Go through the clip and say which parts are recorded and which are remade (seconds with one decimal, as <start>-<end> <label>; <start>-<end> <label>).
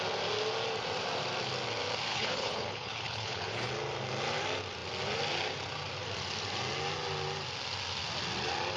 0.0-2.1 recorded; 2.1-3.7 remade; 3.7-8.8 recorded